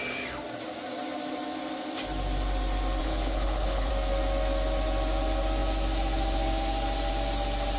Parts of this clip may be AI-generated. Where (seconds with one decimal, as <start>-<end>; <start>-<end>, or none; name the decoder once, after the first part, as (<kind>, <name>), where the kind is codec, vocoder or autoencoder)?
3.0-3.9 (codec, HILCodec)